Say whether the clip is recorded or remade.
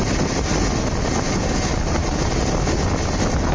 recorded